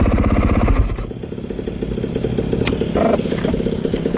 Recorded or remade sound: recorded